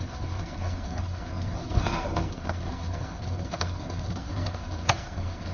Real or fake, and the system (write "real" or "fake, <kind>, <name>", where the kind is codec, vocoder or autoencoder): fake, codec, SNAC